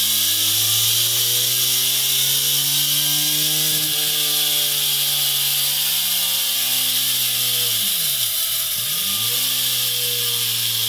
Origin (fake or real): real